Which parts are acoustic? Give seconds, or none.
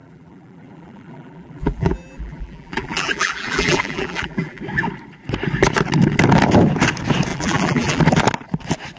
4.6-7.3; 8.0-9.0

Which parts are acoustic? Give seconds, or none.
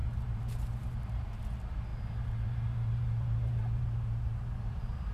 1.4-1.9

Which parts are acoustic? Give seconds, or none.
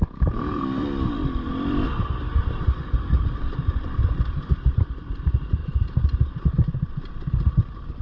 none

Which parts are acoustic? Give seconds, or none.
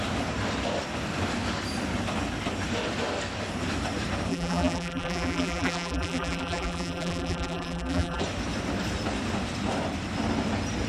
0.0-4.3; 8.2-10.9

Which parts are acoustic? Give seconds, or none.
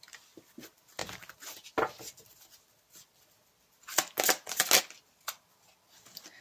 0.0-6.4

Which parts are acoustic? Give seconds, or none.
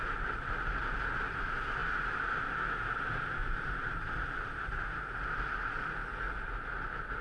0.0-3.4; 5.1-7.2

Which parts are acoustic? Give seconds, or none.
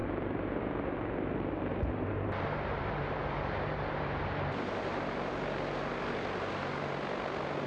0.0-1.7; 5.3-7.7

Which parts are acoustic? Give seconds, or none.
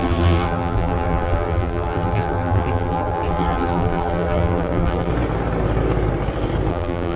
5.1-6.7